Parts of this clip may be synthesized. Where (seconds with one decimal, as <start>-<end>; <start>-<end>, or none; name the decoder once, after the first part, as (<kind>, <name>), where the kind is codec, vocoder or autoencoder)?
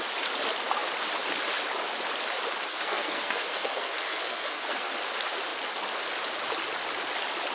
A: 2.7-4.9 (codec, SNAC)